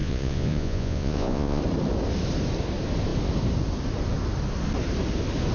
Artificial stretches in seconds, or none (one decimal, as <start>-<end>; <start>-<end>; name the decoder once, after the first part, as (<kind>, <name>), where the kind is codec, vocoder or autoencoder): 0.0-1.6 (vocoder, Vocos)